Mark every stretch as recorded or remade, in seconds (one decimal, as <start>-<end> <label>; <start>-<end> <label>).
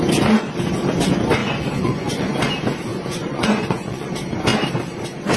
0.0-1.4 recorded; 1.4-2.5 remade; 2.5-2.9 recorded; 2.9-4.1 remade; 4.1-5.4 recorded